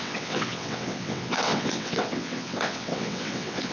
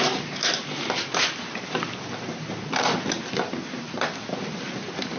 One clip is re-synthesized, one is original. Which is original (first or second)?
second